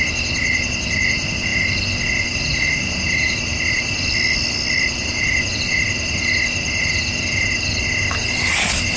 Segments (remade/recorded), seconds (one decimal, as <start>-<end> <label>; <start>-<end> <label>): 0.0-9.0 recorded